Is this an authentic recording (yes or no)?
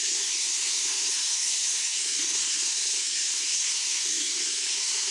no